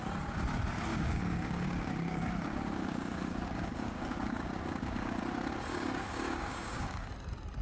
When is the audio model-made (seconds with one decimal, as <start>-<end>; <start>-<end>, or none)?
0.9-5.2; 5.7-7.1